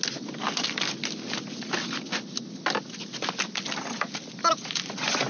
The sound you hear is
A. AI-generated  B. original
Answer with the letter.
B